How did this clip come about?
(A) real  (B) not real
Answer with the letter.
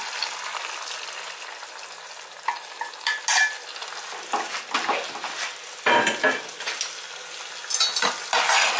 A